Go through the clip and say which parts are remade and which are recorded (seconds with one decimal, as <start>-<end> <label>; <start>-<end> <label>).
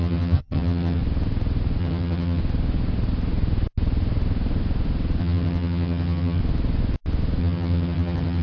0.0-1.0 remade; 1.0-1.8 recorded; 1.8-2.4 remade; 2.4-5.2 recorded; 5.2-6.4 remade; 6.4-7.4 recorded; 7.4-8.4 remade